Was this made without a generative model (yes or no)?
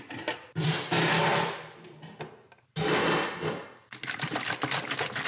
yes